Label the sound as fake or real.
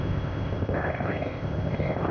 fake